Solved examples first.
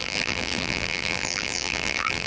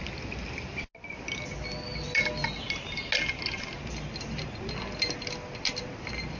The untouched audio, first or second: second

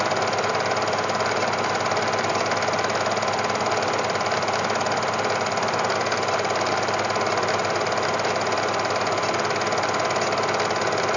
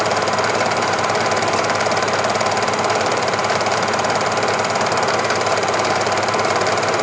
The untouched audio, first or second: first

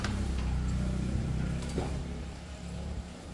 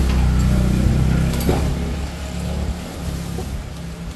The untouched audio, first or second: second